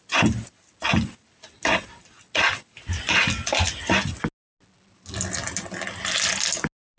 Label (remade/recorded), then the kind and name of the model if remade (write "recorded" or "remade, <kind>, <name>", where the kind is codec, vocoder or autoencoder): recorded